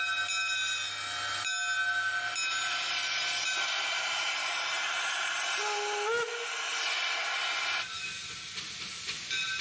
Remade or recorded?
recorded